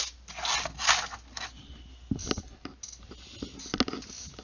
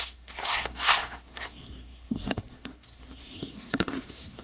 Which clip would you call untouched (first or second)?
first